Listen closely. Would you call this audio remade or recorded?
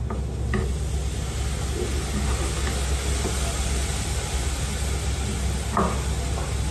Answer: recorded